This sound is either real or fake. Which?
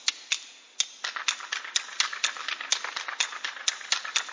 real